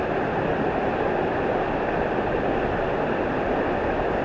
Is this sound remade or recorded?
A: recorded